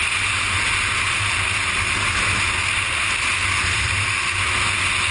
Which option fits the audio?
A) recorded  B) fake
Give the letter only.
A